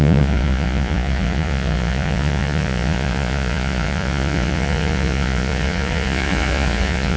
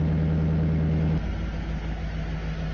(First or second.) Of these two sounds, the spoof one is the first